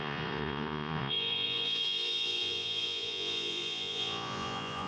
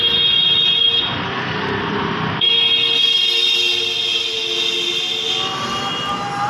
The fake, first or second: first